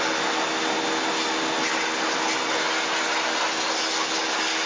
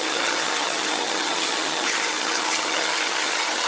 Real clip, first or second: first